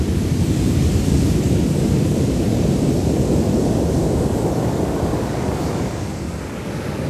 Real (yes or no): no